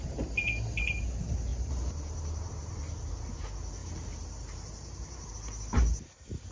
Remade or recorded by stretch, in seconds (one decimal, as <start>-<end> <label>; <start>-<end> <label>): 0.0-1.1 remade; 1.1-1.5 recorded; 1.5-2.5 remade; 2.5-3.8 recorded; 3.8-5.3 remade; 5.3-6.5 recorded